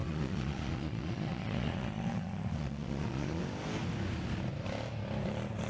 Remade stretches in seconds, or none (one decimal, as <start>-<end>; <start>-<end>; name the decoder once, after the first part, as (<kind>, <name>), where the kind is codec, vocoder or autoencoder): 0.0-3.4 (vocoder, Vocos)